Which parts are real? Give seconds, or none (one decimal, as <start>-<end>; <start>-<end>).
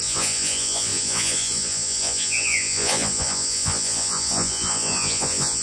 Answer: none